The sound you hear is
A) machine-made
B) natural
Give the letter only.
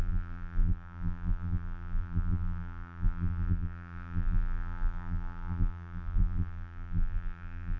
A